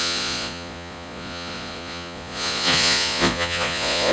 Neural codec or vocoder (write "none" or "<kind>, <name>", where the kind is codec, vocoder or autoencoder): vocoder, Vocos